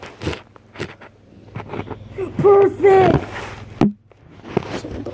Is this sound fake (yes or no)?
no